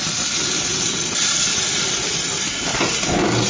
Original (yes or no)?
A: yes